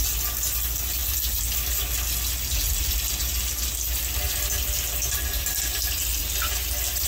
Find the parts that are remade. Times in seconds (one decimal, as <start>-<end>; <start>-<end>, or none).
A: 5.7-6.2